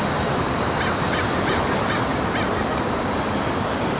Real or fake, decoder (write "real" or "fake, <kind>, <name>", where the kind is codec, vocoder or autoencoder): real